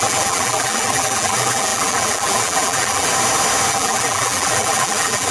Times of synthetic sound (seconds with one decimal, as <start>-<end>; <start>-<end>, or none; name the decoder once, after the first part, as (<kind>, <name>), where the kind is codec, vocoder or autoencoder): 0.0-3.1 (vocoder, BigVGAN v2); 3.7-5.3

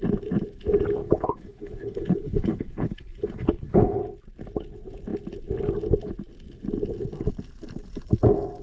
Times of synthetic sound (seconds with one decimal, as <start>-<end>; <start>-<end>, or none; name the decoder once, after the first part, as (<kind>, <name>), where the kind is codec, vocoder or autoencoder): 1.0-4.0 (codec, HILCodec)

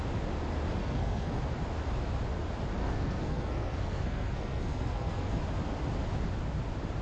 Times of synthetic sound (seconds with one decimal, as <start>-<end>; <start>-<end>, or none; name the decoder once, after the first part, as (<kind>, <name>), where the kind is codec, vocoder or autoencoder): 0.8-1.4 (codec, SNAC); 2.8-5.4

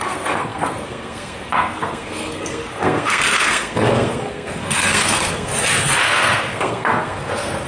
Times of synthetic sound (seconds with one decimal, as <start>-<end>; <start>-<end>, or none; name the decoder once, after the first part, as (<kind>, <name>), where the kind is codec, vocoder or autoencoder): 0.0-5.5 (codec, SNAC); 6.0-7.7

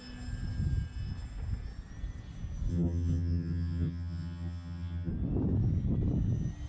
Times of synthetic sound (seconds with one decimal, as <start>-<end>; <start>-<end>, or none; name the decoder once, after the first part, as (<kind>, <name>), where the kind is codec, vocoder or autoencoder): 2.7-5.1 (vocoder, HiFi-GAN)

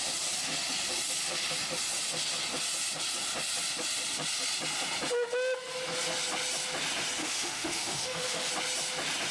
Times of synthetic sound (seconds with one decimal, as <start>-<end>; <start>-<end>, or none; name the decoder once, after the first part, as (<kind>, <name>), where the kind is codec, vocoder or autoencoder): 7.2-8.5 (autoencoder, DAC-VAE)

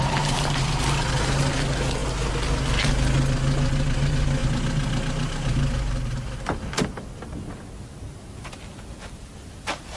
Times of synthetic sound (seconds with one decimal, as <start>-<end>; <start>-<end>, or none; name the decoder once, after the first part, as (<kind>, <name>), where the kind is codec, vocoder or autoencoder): none